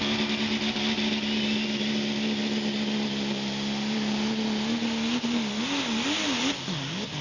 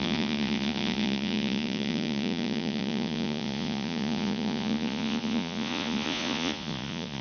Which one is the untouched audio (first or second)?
first